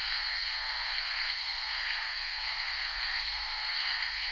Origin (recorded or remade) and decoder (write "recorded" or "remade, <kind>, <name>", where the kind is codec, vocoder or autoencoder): remade, codec, SNAC